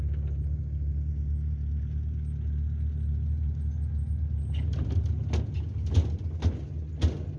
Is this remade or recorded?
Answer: recorded